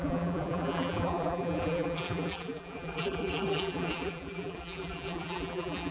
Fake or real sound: fake